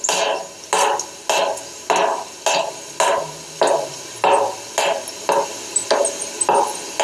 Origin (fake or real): real